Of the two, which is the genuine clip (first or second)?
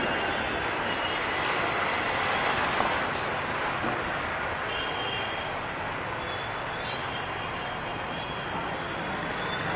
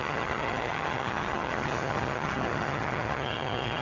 first